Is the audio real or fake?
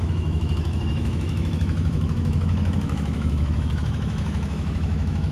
fake